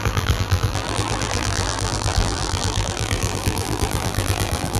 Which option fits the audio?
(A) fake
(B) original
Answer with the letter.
A